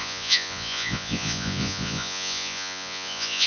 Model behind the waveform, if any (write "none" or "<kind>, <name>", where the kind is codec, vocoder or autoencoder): vocoder, Vocos